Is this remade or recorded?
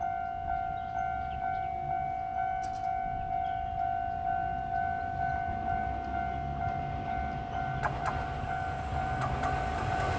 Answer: recorded